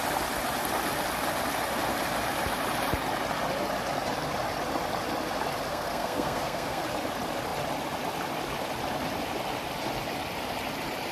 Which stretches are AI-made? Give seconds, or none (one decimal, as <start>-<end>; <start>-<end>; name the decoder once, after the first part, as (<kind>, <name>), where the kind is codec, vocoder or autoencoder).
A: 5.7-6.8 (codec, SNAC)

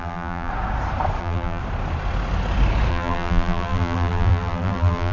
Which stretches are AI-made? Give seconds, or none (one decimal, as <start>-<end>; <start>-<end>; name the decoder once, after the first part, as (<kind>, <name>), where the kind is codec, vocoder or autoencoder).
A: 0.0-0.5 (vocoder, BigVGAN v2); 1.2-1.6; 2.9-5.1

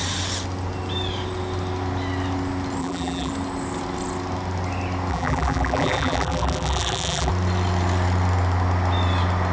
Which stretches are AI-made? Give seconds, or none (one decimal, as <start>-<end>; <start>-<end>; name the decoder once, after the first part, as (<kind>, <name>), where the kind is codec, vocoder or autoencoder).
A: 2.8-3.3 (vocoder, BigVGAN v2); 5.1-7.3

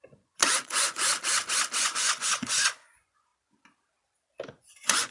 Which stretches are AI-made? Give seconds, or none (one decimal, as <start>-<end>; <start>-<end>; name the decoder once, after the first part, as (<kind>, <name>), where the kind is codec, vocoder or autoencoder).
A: 0.0-1.1 (vocoder, Vocos); 1.8-3.3; 4.6-5.1

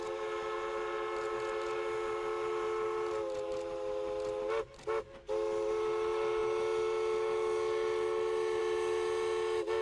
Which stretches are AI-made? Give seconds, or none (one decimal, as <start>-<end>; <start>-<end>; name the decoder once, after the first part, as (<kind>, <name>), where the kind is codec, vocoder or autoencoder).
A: none

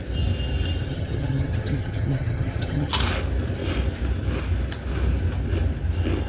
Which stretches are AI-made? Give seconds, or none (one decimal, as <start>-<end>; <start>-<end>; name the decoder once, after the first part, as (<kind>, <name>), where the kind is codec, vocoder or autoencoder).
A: 0.9-2.9 (vocoder, HiFi-GAN)

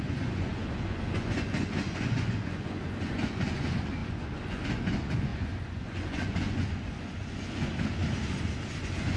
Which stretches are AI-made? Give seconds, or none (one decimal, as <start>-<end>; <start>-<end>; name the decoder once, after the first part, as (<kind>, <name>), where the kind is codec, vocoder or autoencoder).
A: 0.0-7.7 (vocoder, Vocos); 8.7-9.2